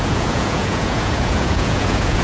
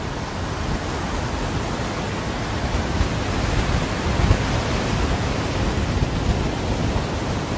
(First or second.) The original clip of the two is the second